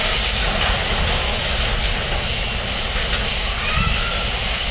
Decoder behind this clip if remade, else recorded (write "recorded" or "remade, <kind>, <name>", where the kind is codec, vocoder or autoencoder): recorded